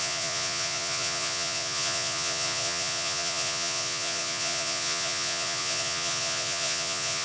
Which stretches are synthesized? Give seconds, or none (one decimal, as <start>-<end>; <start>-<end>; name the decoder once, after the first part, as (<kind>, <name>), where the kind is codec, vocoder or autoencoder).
0.0-7.2 (vocoder, Vocos)

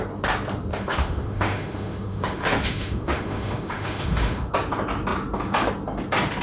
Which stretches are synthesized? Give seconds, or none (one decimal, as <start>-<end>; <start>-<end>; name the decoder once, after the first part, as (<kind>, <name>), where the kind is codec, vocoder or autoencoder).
0.7-4.5 (autoencoder, DAC-VAE)

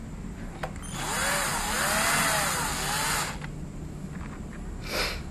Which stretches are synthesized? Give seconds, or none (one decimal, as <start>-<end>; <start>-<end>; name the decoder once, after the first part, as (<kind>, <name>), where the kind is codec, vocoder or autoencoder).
none

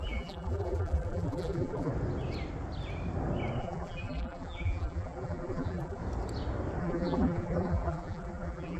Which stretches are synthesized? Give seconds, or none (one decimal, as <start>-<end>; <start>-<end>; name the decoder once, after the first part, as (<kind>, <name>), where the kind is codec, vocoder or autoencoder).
0.0-1.9 (vocoder, BigVGAN v2); 3.6-6.0; 6.8-8.8

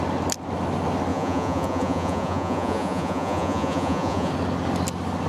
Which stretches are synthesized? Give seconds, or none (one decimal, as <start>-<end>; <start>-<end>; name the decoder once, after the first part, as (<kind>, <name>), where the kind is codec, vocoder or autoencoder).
1.1-4.3 (vocoder, Vocos)

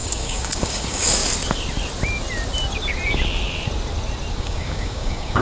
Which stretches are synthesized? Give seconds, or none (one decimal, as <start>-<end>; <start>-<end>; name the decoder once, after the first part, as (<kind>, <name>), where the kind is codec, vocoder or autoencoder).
0.0-1.2 (codec, DAC); 4.4-5.4

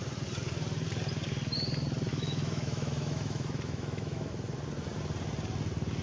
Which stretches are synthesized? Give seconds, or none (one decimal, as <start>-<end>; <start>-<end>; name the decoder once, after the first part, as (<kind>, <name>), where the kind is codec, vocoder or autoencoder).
2.1-4.3 (autoencoder, DAC-VAE)